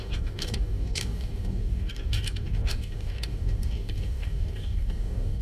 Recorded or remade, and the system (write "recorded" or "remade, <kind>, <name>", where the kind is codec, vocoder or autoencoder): remade, codec, DAC